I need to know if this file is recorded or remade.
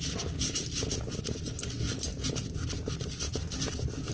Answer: recorded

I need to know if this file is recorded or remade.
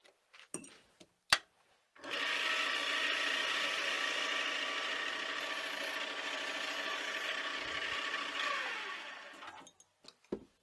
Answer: recorded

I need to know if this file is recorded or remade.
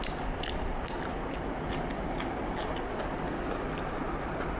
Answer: recorded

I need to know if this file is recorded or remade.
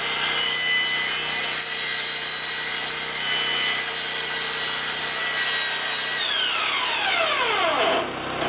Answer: recorded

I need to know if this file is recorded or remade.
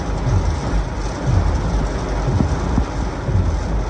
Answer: recorded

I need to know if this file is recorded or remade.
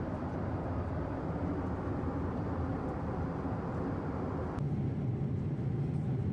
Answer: recorded